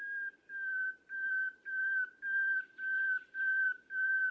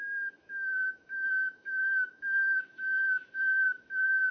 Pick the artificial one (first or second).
second